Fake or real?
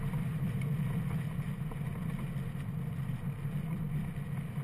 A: real